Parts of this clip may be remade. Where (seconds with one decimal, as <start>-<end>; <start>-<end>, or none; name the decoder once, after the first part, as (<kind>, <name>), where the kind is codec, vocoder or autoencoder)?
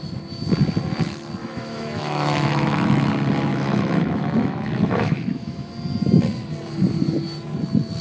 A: 1.4-3.1 (autoencoder, DAC-VAE); 3.5-5.7